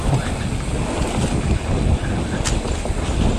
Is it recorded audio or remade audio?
recorded